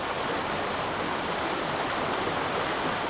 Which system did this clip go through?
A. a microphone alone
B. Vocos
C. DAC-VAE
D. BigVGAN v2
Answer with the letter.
A